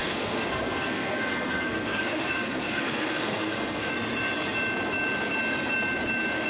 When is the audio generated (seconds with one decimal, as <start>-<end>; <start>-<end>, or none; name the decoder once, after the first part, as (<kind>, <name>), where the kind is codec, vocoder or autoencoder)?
0.0-3.9 (codec, SNAC)